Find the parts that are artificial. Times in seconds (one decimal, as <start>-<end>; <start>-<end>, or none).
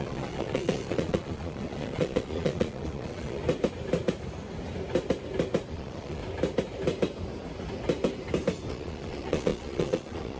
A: 0.0-3.4; 5.7-6.2; 8.7-10.4